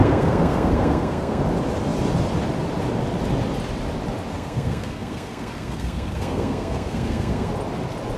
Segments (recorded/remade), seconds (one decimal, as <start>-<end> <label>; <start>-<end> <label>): 0.0-1.4 remade; 1.4-4.3 recorded; 4.3-7.5 remade; 7.5-8.2 recorded